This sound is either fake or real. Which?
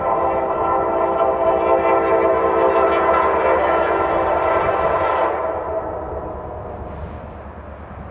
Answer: real